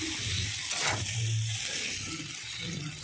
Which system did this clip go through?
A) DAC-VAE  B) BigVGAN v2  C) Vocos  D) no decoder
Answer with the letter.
D